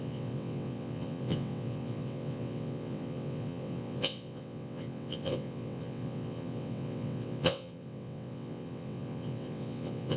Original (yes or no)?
no